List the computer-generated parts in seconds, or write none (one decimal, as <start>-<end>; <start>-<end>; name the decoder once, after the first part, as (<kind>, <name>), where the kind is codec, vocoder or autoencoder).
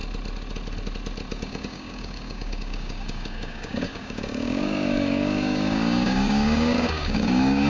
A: 1.3-7.7 (codec, DAC)